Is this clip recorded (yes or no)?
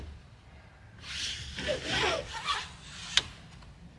yes